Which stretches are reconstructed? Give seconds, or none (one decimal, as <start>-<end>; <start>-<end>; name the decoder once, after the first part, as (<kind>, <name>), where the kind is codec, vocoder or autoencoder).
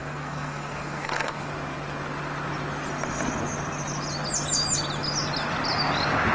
0.0-1.5 (codec, SNAC)